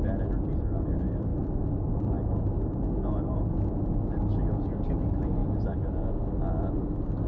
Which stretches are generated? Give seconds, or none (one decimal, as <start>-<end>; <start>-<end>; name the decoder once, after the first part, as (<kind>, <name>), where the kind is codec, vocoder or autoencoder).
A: 1.3-1.9 (vocoder, BigVGAN v2)